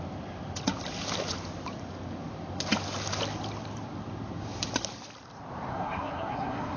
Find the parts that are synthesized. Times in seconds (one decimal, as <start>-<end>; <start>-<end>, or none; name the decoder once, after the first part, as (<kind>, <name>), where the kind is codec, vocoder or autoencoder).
5.7-6.8 (codec, SNAC)

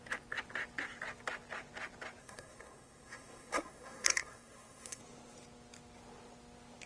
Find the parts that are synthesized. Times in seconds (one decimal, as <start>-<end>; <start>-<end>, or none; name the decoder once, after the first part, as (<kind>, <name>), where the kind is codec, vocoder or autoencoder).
2.2-5.0 (codec, SNAC)

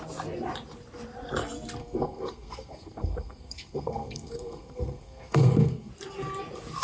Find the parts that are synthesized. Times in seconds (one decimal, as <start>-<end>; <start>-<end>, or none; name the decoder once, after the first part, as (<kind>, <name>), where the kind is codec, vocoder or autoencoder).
1.8-5.9 (codec, SNAC)

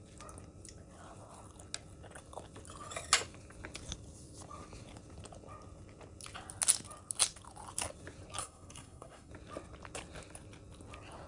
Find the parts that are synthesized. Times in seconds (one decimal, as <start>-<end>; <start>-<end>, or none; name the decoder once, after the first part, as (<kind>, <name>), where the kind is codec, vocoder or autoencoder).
8.4-9.3 (codec, SNAC)